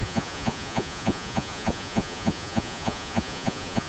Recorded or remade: remade